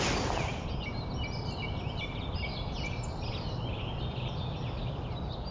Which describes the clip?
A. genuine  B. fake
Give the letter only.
A